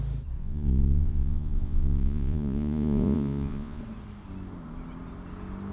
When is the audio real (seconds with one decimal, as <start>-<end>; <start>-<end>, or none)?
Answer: 0.0-0.4; 3.8-5.7